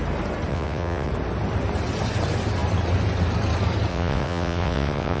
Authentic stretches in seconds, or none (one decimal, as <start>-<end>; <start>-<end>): 0.0-0.5; 1.1-3.9